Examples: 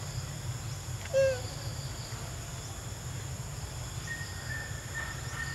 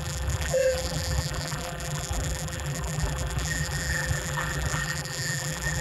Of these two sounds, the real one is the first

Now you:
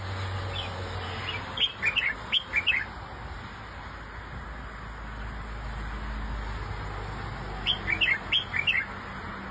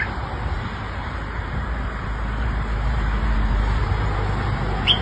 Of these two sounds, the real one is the first